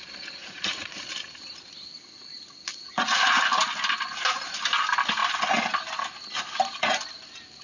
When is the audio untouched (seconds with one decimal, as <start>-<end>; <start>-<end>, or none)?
0.0-0.4; 1.0-2.7; 3.4-7.6